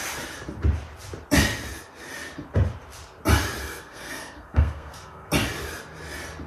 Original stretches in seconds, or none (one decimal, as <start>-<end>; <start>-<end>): 0.0-3.6; 5.3-6.5